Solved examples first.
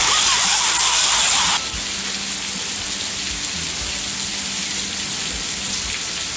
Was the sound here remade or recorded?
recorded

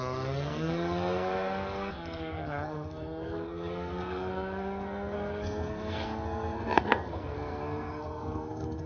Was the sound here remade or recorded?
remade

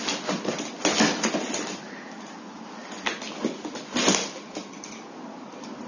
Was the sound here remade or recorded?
recorded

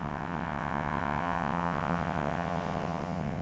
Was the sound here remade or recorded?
remade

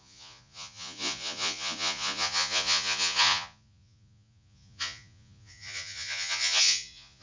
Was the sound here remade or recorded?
remade